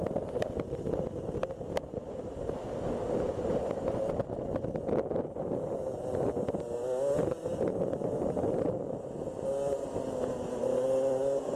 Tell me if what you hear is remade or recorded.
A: recorded